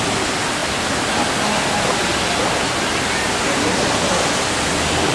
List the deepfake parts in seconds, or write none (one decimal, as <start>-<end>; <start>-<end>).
none